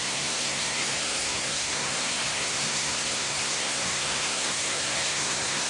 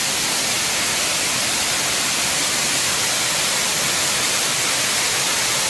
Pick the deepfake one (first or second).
first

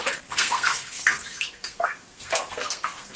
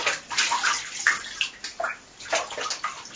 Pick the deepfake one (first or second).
first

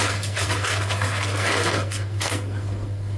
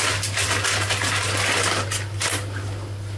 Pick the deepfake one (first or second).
first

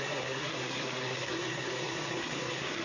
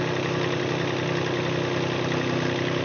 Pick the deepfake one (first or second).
first